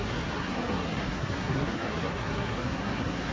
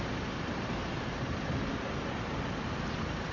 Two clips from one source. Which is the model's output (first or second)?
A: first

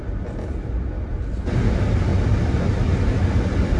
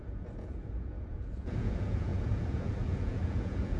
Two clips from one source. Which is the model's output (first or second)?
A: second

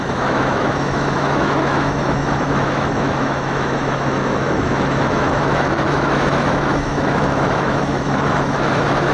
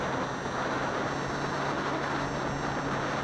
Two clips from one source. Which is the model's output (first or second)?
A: first